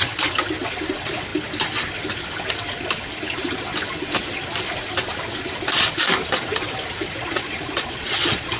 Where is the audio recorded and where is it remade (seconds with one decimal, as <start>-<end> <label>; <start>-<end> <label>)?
0.0-7.0 recorded; 7.0-8.6 remade